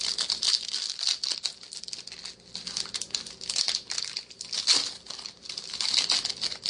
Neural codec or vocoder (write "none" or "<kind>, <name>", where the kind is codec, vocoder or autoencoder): none